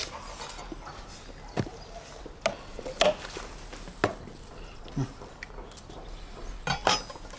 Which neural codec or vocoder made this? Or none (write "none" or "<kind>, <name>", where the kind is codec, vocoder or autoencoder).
none